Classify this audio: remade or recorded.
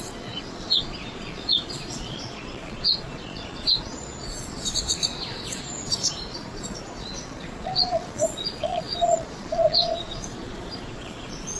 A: remade